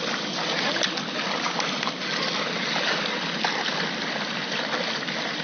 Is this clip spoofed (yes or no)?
no